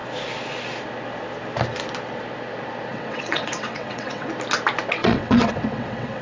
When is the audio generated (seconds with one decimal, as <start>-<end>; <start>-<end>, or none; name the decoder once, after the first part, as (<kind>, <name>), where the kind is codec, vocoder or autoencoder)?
2.9-4.3 (vocoder, WaveNeXt); 5.0-6.2